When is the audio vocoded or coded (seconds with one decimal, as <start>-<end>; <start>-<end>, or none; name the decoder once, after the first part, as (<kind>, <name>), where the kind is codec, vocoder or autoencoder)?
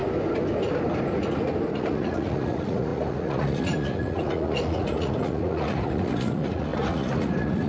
1.7-7.7 (vocoder, Vocos)